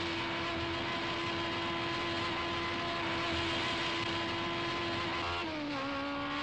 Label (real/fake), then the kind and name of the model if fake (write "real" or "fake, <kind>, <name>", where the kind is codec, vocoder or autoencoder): real